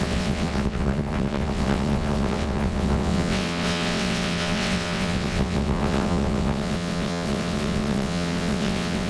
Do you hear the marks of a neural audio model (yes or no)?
yes